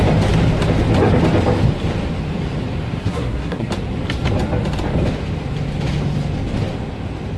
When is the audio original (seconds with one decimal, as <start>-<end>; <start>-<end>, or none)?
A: 0.0-3.0; 3.7-7.4

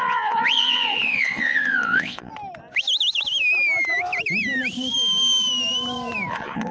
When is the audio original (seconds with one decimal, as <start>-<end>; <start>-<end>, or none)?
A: 2.3-6.3

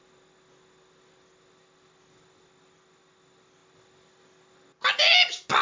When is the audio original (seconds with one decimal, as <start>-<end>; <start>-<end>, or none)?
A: 0.0-5.6

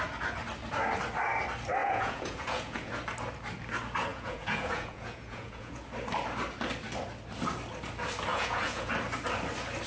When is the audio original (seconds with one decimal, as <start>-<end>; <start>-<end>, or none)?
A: 0.0-1.8; 2.9-4.1; 5.8-8.3; 8.9-9.9

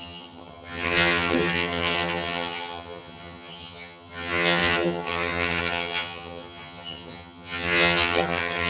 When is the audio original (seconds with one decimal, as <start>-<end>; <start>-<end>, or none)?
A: none

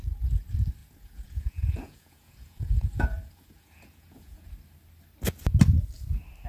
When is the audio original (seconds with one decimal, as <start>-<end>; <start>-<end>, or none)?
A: 0.0-0.8; 4.5-6.5